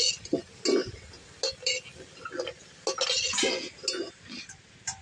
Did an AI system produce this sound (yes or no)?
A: no